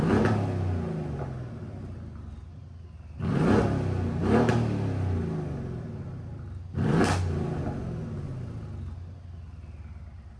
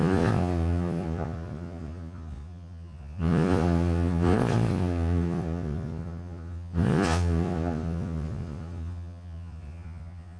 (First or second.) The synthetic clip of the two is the second